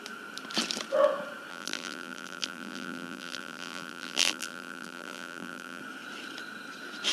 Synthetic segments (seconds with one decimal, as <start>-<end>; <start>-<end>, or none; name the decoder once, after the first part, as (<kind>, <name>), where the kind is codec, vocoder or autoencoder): 1.5-5.8 (vocoder, BigVGAN v2)